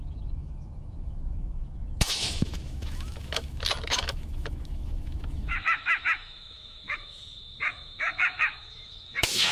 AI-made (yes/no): yes